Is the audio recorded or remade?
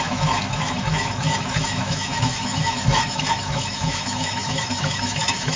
remade